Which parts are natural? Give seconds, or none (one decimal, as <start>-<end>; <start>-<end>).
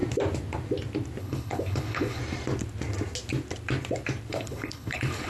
0.0-1.2; 2.2-4.3